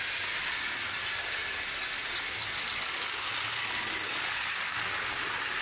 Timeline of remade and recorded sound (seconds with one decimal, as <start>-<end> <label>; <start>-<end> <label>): 0.0-5.6 recorded